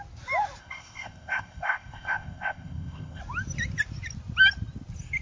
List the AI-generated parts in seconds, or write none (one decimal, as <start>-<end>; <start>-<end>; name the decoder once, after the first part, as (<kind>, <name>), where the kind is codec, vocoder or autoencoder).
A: 0.6-3.2 (codec, ZipCodec)